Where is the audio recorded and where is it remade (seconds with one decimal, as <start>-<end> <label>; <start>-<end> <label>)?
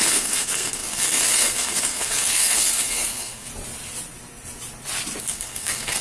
0.0-3.5 remade; 3.5-5.2 recorded; 5.2-6.0 remade